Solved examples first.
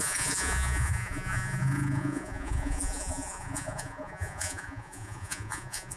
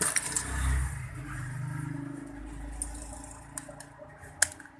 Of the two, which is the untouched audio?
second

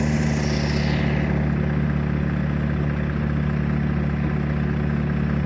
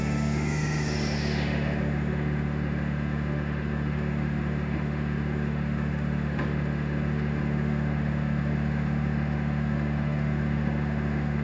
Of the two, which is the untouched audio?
first